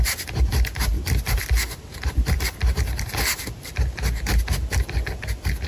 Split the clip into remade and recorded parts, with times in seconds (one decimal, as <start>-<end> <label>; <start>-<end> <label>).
0.0-5.7 recorded